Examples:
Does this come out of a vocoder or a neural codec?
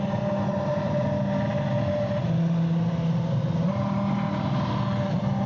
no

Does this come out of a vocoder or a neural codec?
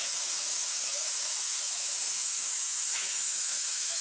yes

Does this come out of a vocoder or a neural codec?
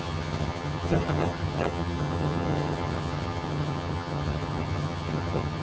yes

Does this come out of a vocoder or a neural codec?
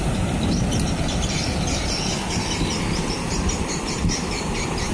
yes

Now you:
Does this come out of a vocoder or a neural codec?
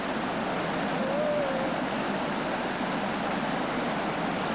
no